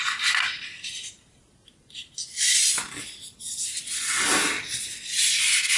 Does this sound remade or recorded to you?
recorded